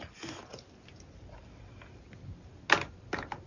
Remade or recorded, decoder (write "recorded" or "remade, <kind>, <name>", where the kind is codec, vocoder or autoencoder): recorded